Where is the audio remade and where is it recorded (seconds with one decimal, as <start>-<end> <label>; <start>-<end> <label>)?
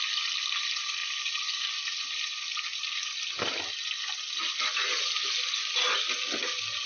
0.0-6.9 recorded